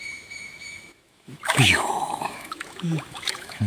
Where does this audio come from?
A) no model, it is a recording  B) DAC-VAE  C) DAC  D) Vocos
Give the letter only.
B